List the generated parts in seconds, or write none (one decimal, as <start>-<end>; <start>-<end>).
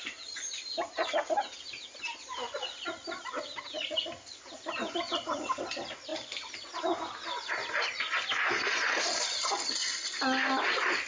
none